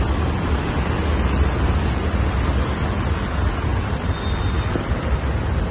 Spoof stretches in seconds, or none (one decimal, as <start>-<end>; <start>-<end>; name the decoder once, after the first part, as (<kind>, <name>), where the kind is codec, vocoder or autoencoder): none